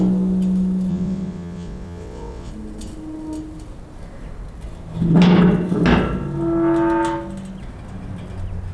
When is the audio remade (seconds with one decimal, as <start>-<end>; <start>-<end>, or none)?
0.9-2.5